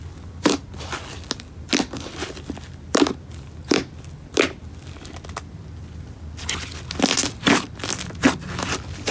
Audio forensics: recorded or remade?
recorded